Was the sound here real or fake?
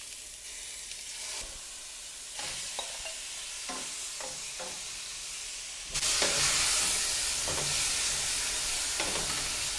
real